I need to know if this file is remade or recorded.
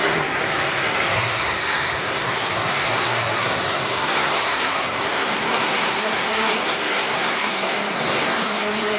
remade